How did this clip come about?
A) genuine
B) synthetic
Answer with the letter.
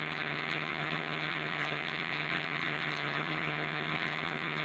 B